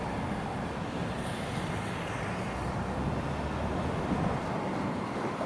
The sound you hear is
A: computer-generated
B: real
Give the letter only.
B